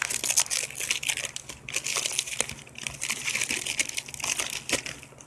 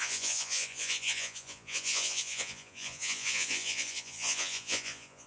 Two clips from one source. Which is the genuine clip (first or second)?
first